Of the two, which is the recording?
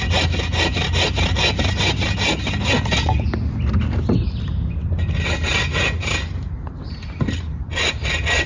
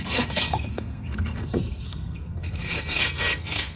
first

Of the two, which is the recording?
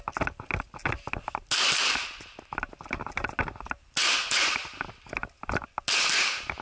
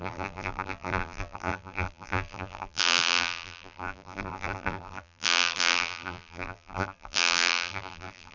first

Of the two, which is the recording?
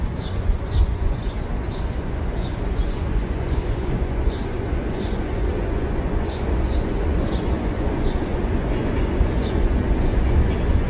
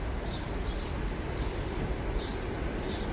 second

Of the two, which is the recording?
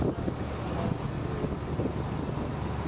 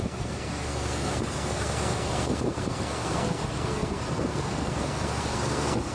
first